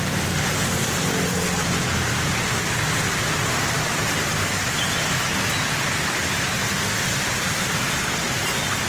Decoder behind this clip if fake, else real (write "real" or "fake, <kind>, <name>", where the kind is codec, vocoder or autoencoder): real